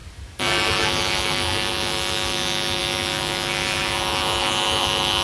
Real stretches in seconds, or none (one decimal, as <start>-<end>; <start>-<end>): 0.0-5.2